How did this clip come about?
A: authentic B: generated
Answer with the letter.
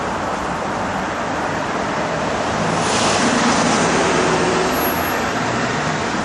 A